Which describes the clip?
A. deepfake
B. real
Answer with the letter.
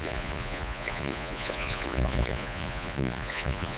A